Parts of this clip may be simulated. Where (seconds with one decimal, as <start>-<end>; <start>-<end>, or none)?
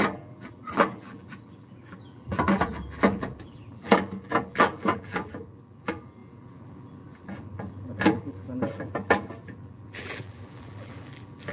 0.0-11.5